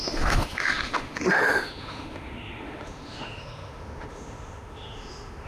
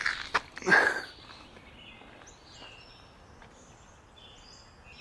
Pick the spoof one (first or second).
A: first